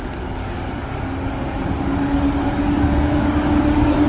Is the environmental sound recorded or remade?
remade